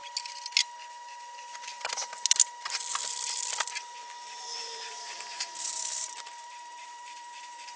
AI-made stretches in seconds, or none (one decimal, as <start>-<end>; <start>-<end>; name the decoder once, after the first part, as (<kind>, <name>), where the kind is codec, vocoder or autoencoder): 4.6-7.8 (vocoder, BigVGAN v2)